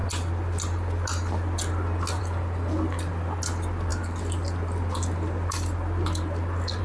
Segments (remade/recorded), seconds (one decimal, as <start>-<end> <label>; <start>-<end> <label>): 0.0-6.8 recorded